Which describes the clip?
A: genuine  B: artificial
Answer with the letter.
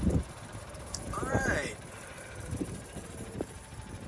B